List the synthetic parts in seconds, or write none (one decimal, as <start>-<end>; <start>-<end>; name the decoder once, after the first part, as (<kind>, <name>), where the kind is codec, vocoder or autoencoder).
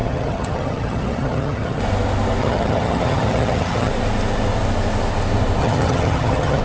0.0-1.8 (vocoder, HiFi-GAN); 2.4-3.9; 5.6-6.6